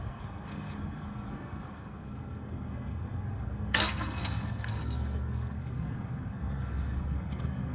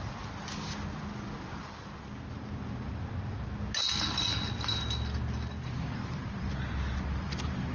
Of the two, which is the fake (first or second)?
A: first